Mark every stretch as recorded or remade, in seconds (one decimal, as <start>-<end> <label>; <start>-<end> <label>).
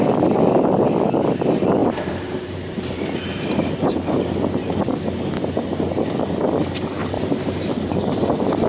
0.0-1.8 recorded; 1.8-3.8 remade; 3.8-7.0 recorded; 7.0-8.0 remade; 8.0-8.7 recorded